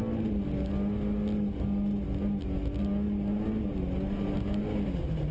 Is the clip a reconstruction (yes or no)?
no